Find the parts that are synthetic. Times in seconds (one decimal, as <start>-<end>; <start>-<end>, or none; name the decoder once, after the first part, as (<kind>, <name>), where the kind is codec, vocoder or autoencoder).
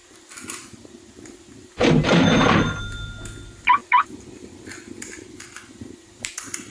none